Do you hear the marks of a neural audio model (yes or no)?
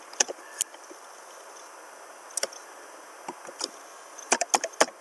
no